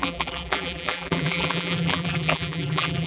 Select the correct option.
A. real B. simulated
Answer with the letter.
B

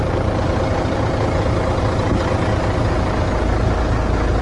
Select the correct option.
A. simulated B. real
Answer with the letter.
B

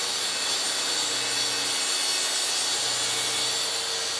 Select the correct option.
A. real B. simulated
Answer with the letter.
A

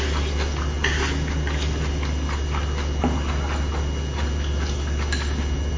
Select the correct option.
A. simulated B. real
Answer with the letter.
B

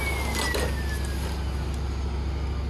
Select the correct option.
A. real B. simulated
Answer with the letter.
A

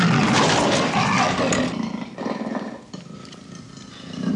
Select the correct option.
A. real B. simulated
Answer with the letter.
B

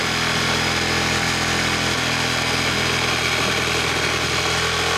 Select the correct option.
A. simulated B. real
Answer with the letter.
B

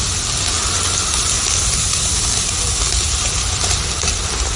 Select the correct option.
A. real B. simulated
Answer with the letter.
A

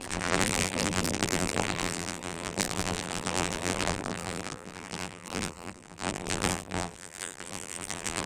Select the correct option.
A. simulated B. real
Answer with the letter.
A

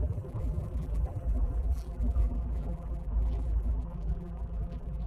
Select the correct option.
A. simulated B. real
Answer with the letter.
A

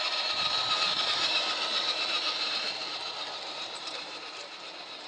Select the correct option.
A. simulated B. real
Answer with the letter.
A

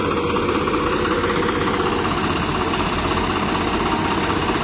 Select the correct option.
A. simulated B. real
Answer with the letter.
B